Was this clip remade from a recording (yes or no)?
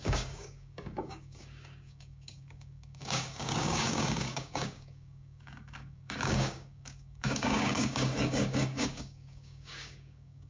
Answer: yes